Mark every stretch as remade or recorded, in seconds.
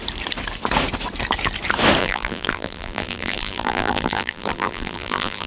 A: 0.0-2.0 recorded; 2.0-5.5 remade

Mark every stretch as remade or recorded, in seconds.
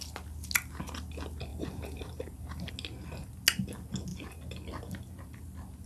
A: 0.0-1.5 recorded; 1.5-2.7 remade; 2.7-5.9 recorded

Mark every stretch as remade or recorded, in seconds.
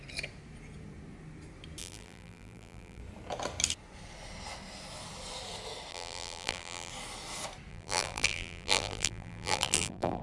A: 0.0-1.8 recorded; 1.8-3.0 remade; 3.0-5.9 recorded; 5.9-6.9 remade; 6.9-7.7 recorded; 7.7-10.2 remade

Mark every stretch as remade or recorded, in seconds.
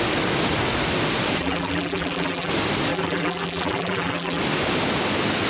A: 0.0-1.4 recorded; 1.4-2.5 remade; 2.5-2.9 recorded; 2.9-4.4 remade; 4.4-5.5 recorded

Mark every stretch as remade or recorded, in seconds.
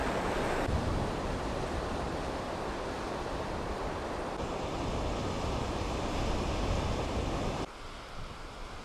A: 0.0-1.5 recorded; 1.5-8.8 remade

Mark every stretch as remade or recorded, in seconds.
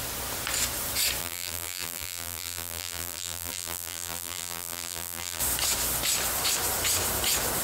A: 0.0-1.2 recorded; 1.2-5.4 remade; 5.4-7.6 recorded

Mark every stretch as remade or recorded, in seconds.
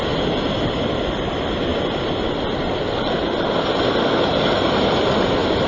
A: 0.0-5.7 recorded